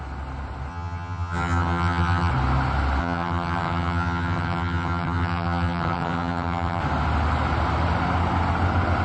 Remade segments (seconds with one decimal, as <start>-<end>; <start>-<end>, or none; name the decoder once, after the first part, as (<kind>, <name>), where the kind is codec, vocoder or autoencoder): 0.7-2.3 (vocoder, HiFi-GAN); 3.0-6.8